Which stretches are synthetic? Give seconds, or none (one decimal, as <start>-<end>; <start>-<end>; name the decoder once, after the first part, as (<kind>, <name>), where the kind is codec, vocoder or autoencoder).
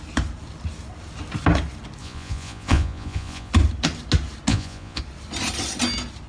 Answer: 2.0-3.5 (vocoder, Vocos); 4.5-5.0